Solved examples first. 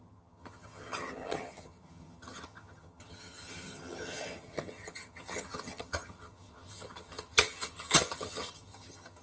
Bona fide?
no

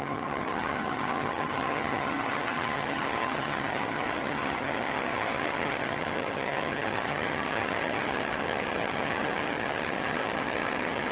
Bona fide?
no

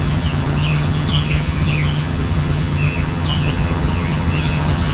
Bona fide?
no